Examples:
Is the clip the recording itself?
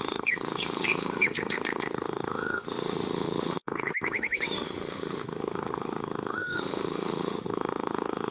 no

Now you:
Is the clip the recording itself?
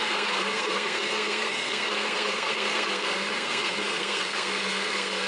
no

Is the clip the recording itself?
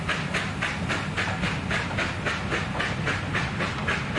yes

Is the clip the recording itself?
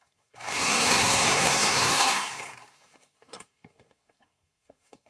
no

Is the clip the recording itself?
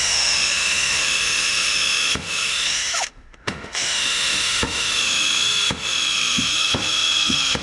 no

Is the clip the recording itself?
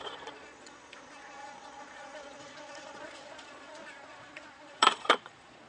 no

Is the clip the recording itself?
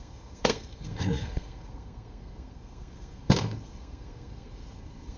no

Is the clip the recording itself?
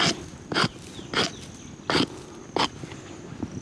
yes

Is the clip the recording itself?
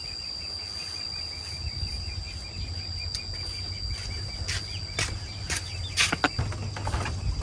yes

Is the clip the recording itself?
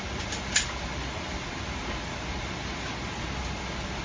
yes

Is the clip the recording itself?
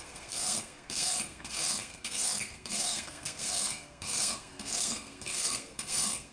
no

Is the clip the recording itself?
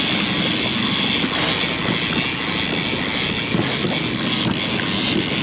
yes